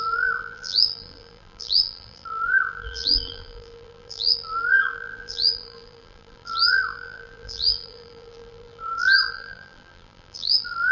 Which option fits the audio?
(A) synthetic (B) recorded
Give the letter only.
A